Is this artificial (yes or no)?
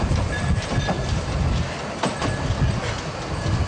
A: no